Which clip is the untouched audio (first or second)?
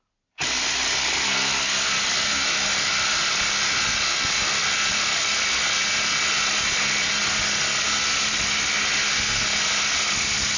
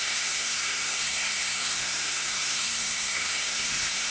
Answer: first